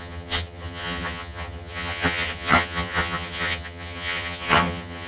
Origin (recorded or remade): remade